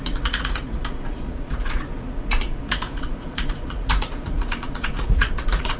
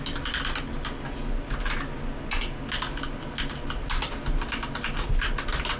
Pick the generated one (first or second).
first